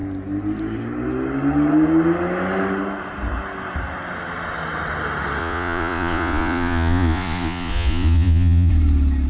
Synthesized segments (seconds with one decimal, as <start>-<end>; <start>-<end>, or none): 5.4-8.7